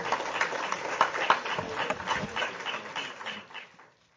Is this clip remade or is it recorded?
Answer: recorded